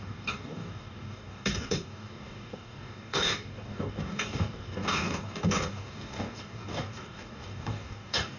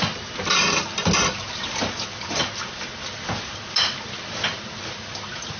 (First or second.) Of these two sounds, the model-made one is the first